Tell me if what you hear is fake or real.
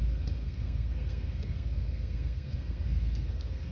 fake